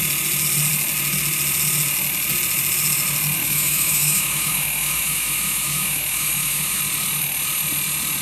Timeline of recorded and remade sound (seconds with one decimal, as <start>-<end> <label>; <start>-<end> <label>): 0.0-3.4 recorded; 3.4-6.8 remade; 6.8-8.2 recorded